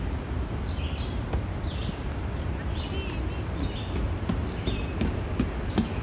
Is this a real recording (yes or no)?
yes